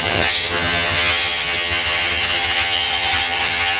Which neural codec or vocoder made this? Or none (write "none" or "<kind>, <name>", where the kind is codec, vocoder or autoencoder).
vocoder, HiFi-GAN